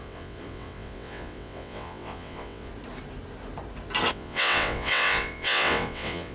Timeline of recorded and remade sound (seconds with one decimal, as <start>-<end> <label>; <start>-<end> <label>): 0.0-2.7 remade; 2.7-4.1 recorded; 4.1-6.3 remade